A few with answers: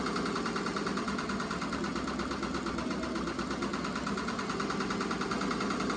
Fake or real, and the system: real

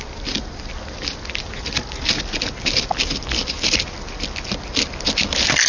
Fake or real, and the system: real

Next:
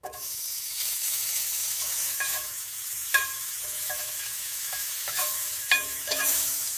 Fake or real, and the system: fake, autoencoder, DAC-VAE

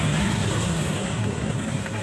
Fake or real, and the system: fake, codec, SNAC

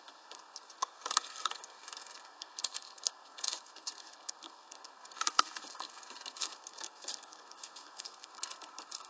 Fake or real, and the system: fake, codec, SNAC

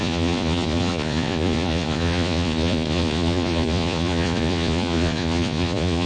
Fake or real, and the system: fake, vocoder, Vocos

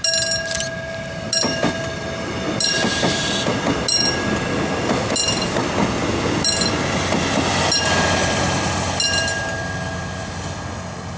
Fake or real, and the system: real